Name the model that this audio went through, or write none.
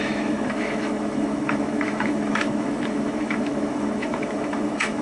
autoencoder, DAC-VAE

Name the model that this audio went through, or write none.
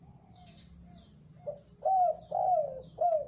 none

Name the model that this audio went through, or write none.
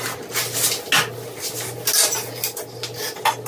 none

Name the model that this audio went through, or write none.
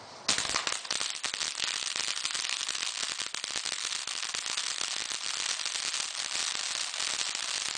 none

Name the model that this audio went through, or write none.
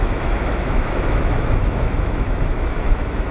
autoencoder, DAC-VAE